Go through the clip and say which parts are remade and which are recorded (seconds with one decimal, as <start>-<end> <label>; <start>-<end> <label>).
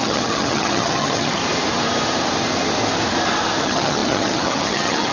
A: 0.0-1.4 remade; 1.4-3.6 recorded; 3.6-5.1 remade